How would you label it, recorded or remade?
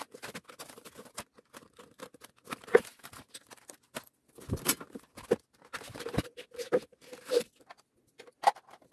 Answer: recorded